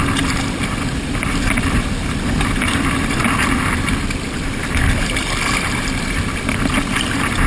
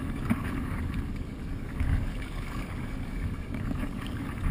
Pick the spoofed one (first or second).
second